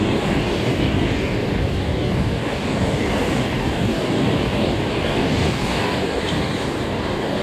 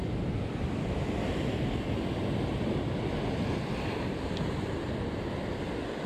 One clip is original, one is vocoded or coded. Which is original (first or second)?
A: second